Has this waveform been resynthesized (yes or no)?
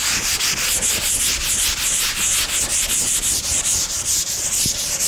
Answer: no